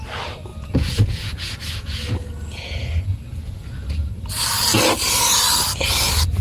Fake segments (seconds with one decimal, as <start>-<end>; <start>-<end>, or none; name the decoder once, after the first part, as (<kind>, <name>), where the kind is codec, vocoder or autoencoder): 0.5-4.1 (vocoder, Vocos)